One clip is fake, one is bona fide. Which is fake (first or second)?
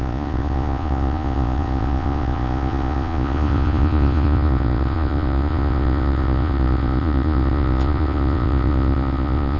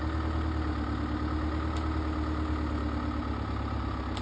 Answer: first